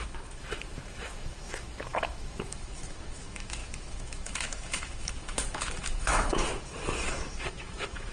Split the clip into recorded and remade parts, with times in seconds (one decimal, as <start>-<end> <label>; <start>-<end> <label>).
0.0-8.1 remade